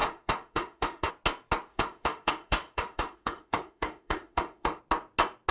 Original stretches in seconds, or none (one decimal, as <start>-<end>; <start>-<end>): 1.1-1.7; 4.8-5.5